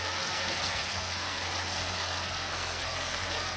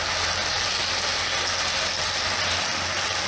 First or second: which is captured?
second